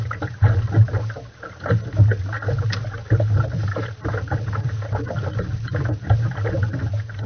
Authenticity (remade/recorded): recorded